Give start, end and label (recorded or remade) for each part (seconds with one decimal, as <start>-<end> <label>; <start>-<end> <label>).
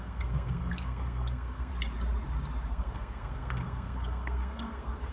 0.0-1.7 remade; 1.7-2.7 recorded; 2.7-5.1 remade